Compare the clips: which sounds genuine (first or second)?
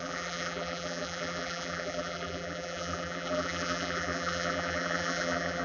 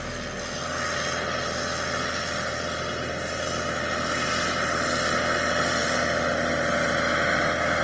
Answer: second